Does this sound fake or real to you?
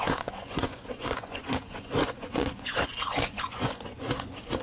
fake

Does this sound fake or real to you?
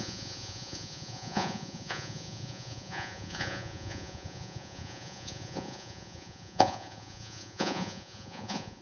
fake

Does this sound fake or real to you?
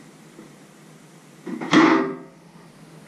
real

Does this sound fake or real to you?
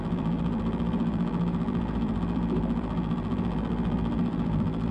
fake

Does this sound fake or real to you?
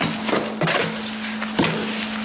real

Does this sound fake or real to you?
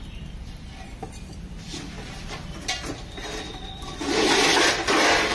fake